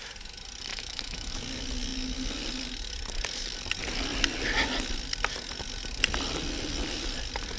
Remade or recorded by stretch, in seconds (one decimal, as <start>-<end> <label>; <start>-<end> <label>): 0.0-0.7 recorded; 0.7-1.4 remade; 1.4-7.6 recorded